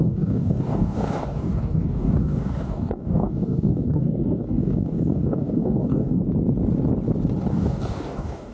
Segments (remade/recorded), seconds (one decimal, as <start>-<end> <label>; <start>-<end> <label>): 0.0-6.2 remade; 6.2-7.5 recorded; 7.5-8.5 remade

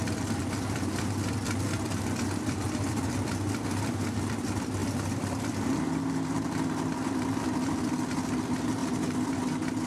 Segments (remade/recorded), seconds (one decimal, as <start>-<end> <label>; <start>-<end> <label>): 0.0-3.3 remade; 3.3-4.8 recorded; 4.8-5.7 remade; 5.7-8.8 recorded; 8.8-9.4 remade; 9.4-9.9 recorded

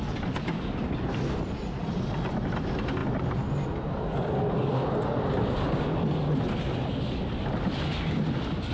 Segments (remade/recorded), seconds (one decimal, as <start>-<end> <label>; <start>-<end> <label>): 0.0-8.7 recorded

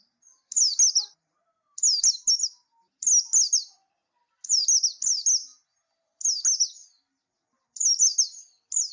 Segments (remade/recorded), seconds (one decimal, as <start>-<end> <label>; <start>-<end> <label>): 0.0-8.9 recorded

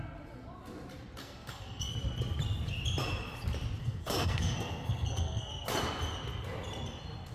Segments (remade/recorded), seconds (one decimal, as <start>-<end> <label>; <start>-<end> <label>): 0.0-1.2 recorded; 1.2-1.9 remade; 1.9-3.8 recorded; 3.8-5.5 remade; 5.5-7.3 recorded